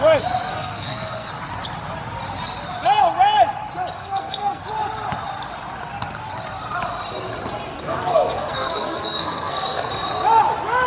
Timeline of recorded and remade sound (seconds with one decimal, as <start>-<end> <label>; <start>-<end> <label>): 0.0-0.5 recorded; 0.5-1.3 remade; 1.3-4.0 recorded; 4.0-4.6 remade; 4.6-7.7 recorded; 7.7-9.9 remade; 9.9-10.9 recorded